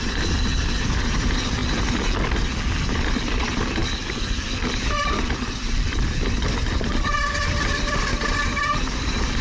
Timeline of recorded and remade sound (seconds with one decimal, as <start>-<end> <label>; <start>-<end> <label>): 0.0-1.6 remade; 1.6-2.8 recorded; 2.8-9.4 remade

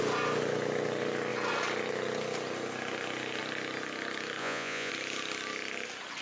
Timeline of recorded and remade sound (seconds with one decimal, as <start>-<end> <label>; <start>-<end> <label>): 0.0-4.4 recorded; 4.4-4.9 remade; 4.9-6.2 recorded

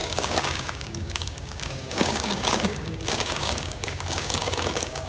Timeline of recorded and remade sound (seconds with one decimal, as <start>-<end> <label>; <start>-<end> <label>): 0.0-5.1 remade

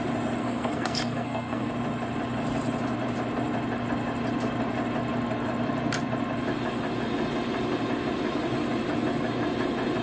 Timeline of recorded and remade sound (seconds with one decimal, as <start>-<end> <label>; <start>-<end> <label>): 0.0-0.4 recorded; 0.4-1.7 remade; 1.7-10.0 recorded

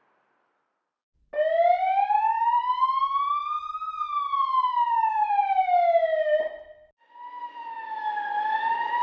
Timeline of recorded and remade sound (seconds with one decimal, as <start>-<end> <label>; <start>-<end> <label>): 0.0-2.5 recorded; 2.5-3.0 remade; 3.0-9.0 recorded

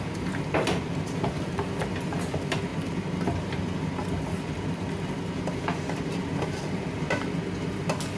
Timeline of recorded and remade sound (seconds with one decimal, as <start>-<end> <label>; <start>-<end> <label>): 0.0-8.2 recorded

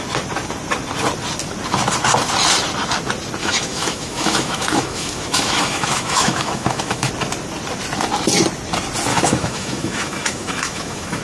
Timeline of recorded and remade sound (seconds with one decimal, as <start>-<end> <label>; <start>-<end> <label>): 0.0-3.4 recorded; 3.4-7.1 remade; 7.1-9.1 recorded; 9.1-11.2 remade

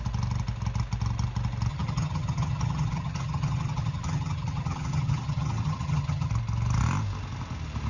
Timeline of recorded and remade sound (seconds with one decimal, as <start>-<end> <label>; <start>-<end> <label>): 0.0-1.7 recorded; 1.7-6.3 remade; 6.3-7.9 recorded